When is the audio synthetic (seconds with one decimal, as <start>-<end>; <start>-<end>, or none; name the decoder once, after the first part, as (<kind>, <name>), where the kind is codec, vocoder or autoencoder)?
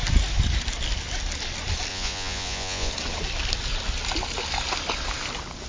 1.9-2.9 (vocoder, Vocos)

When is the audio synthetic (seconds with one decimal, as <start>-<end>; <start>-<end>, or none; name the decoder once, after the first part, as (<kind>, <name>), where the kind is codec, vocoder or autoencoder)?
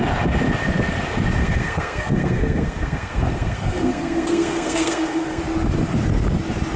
1.4-5.4 (codec, SNAC)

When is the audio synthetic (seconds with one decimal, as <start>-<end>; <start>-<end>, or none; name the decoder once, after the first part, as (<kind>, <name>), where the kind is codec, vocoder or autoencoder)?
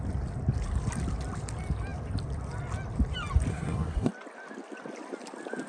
3.5-4.1 (codec, SNAC)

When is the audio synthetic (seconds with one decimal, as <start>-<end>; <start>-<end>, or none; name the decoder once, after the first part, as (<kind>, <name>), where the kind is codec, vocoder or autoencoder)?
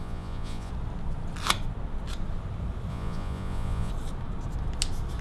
0.0-0.7 (vocoder, Vocos); 2.9-3.9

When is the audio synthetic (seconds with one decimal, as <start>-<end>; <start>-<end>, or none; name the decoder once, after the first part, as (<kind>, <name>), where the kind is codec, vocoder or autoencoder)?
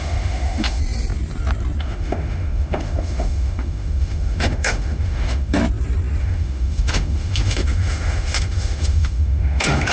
0.0-0.8 (autoencoder, DAC-VAE); 1.8-5.6; 6.2-9.9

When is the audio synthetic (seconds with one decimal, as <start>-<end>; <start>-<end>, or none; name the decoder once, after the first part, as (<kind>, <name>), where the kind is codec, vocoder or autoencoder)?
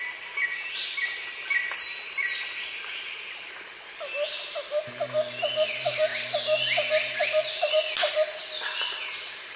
none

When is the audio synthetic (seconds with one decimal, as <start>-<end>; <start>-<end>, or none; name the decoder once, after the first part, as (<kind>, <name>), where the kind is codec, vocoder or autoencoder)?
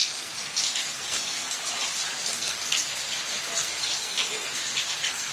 0.0-1.6 (codec, SNAC); 2.1-5.3